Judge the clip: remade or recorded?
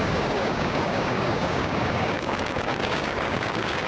remade